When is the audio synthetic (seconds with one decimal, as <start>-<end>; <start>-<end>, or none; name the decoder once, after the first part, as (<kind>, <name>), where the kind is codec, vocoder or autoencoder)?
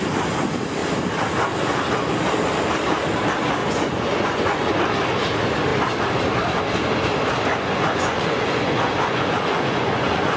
3.6-4.7 (vocoder, Vocos); 7.5-10.4